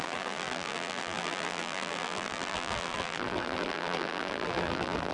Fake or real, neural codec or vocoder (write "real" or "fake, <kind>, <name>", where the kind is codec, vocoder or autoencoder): fake, vocoder, BigVGAN v2